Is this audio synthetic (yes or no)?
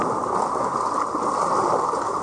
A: no